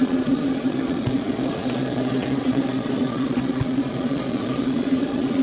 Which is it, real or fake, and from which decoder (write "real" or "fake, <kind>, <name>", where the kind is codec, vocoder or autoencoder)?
fake, vocoder, Vocos